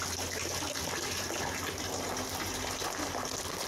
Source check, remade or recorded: recorded